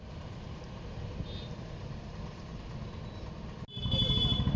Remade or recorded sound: recorded